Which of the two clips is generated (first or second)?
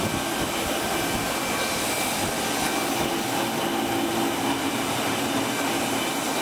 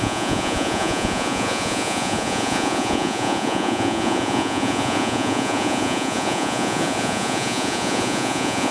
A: second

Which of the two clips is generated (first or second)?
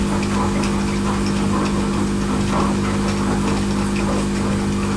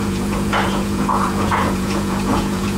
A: second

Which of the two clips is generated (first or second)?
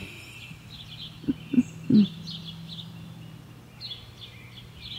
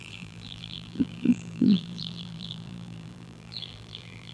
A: second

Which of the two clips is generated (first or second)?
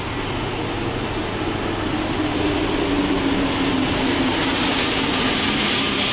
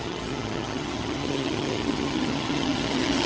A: second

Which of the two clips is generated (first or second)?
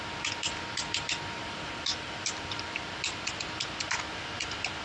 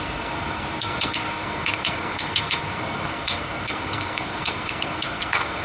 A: second